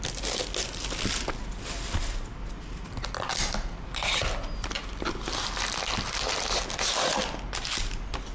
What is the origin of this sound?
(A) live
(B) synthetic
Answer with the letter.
A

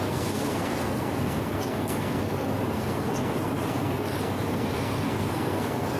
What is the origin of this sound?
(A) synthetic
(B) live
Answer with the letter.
A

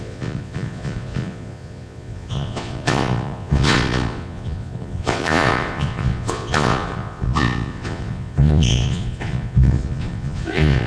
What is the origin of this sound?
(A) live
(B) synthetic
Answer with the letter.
B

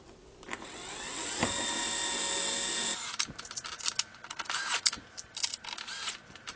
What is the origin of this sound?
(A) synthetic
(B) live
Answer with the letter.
B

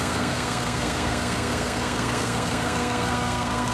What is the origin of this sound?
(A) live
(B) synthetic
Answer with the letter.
B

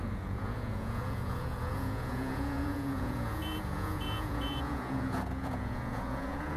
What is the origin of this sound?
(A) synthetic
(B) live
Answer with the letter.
A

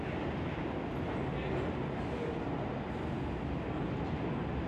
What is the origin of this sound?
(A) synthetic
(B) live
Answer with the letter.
B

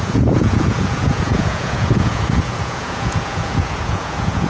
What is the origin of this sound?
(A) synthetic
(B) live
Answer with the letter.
A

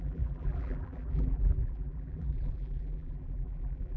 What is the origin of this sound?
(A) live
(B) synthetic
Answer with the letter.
B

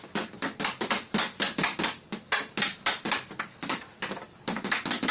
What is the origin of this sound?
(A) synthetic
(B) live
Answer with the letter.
B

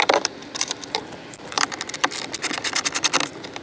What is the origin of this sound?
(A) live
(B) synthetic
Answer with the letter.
B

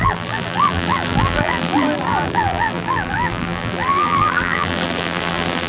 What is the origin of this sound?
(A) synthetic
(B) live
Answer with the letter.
A